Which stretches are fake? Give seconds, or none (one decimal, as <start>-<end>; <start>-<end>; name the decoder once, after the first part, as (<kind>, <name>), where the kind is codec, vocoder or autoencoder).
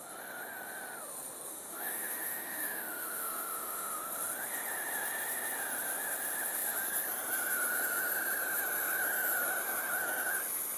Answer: 1.5-4.0 (autoencoder, DAC-VAE)